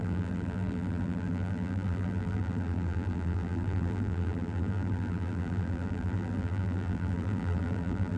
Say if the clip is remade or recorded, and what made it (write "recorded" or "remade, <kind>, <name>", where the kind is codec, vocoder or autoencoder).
remade, vocoder, BigVGAN v2